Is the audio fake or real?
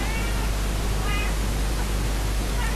real